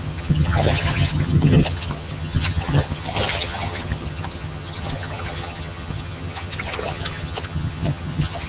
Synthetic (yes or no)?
yes